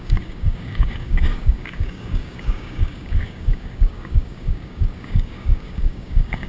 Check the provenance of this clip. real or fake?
fake